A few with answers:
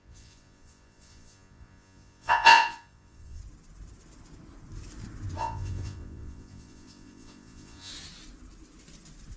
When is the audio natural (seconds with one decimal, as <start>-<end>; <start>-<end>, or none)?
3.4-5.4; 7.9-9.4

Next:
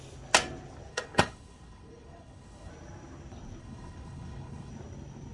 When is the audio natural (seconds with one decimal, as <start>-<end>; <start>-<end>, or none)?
0.0-0.9; 2.7-3.6; 4.7-5.3

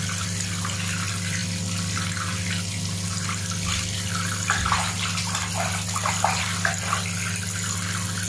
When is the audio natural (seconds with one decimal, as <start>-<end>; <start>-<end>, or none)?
0.0-8.3

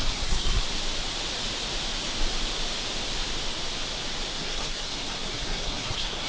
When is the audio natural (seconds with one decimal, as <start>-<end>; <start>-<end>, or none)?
0.6-4.4

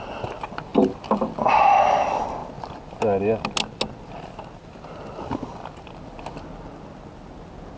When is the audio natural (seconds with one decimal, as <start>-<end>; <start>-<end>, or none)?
0.0-7.8